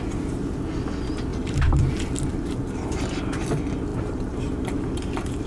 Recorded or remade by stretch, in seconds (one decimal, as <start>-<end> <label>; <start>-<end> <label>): 0.0-1.3 recorded; 1.3-1.9 remade; 1.9-2.3 recorded; 2.3-3.0 remade; 3.0-3.9 recorded; 3.9-5.5 remade